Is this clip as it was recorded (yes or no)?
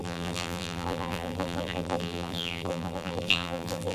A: no